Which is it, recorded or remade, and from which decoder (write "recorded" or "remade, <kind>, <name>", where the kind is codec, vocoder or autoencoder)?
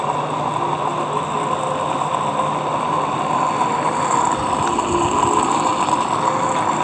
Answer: recorded